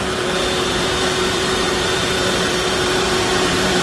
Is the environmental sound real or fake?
fake